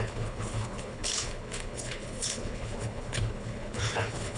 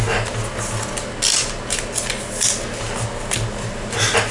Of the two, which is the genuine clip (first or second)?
second